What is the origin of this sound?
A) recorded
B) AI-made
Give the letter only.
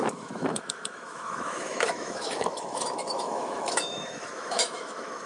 B